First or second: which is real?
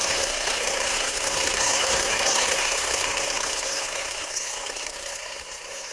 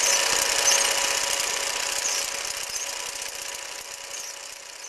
second